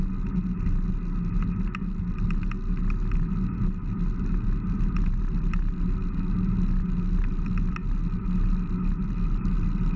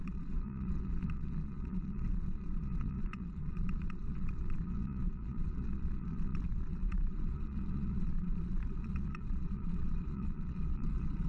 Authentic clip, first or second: first